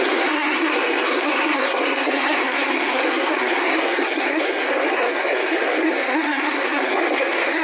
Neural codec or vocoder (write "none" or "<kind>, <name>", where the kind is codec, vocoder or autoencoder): codec, SNAC